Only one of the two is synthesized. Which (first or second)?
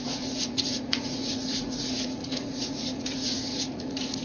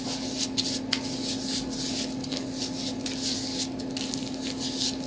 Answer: first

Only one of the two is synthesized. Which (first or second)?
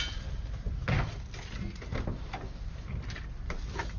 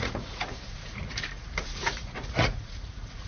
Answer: second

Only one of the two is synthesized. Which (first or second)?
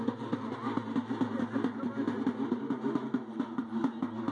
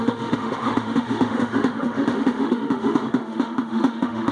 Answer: second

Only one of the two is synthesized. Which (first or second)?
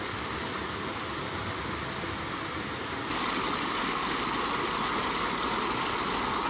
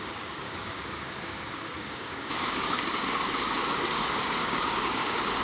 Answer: second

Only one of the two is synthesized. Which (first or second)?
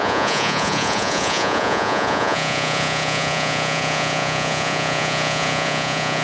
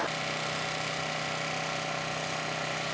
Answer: first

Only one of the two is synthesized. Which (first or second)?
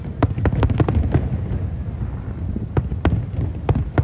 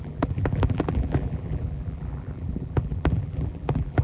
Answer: second